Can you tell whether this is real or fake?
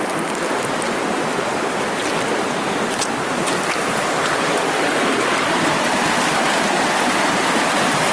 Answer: real